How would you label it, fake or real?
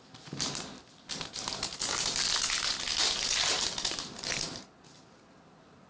real